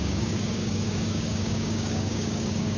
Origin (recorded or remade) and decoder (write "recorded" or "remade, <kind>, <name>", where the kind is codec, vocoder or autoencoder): remade, codec, DAC